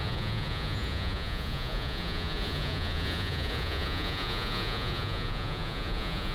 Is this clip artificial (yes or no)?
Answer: yes